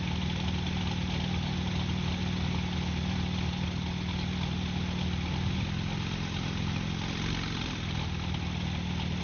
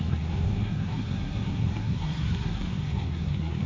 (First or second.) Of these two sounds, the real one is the first